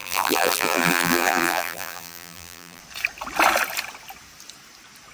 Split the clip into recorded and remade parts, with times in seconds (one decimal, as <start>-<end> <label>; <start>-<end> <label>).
0.0-2.8 remade; 2.8-5.1 recorded